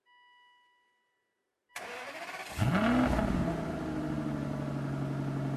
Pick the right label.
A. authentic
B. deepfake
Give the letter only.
A